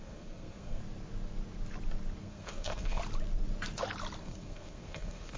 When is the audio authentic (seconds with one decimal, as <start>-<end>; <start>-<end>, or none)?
0.8-2.2; 3.0-4.2

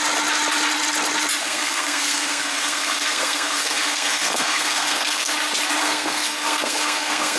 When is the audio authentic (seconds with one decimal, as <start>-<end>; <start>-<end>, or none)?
0.0-1.4; 5.3-5.8